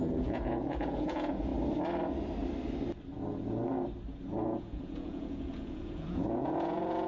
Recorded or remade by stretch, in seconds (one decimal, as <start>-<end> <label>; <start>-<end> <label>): 0.0-1.5 remade; 1.5-4.6 recorded; 4.6-7.1 remade

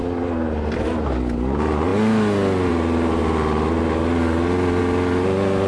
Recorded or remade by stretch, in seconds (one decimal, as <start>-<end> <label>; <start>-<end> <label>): 0.0-5.7 recorded

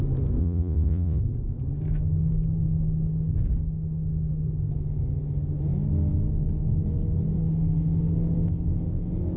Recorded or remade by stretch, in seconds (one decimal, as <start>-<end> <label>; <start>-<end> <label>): 0.0-0.4 recorded; 0.4-1.2 remade; 1.2-9.4 recorded

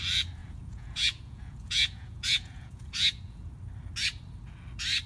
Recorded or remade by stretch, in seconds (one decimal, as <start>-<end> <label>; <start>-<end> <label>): 0.0-0.4 recorded; 0.4-3.5 remade; 3.5-5.1 recorded